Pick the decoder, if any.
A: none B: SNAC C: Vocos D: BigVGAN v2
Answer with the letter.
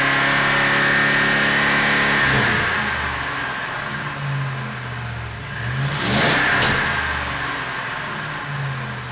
A